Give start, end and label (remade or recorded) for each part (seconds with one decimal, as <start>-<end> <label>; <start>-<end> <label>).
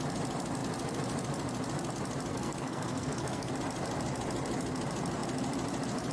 0.0-2.3 recorded; 2.3-3.5 remade; 3.5-6.1 recorded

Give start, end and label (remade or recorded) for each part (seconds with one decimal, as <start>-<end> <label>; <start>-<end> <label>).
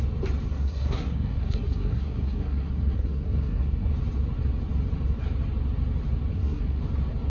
0.0-0.5 recorded; 0.5-3.9 remade; 3.9-6.3 recorded; 6.3-6.8 remade; 6.8-7.3 recorded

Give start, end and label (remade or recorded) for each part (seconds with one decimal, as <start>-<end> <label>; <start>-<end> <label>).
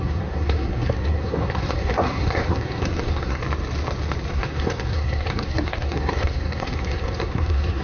0.0-3.4 remade; 3.4-4.3 recorded; 4.3-7.8 remade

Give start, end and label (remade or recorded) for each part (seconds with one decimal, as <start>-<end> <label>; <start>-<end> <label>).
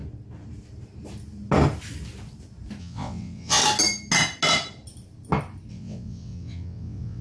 0.0-2.8 recorded; 2.8-3.6 remade; 3.6-5.7 recorded; 5.7-7.2 remade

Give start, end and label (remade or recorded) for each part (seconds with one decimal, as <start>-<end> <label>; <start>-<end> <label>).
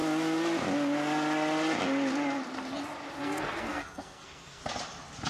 0.0-3.2 recorded; 3.2-4.6 remade; 4.6-5.3 recorded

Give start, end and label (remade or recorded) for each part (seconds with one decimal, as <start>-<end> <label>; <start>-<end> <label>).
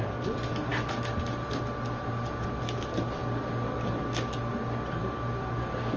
0.0-6.0 recorded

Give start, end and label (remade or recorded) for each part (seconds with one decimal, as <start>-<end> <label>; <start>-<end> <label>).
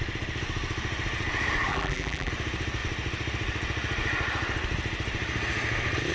0.0-1.7 recorded; 1.7-2.3 remade; 2.3-6.1 recorded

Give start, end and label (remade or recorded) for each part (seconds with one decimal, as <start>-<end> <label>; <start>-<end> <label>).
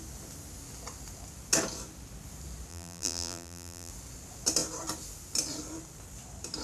0.0-2.7 recorded; 2.7-3.9 remade; 3.9-6.6 recorded